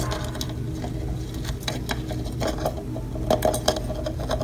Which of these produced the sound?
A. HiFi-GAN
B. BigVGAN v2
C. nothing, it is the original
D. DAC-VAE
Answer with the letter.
C